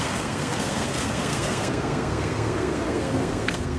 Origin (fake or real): fake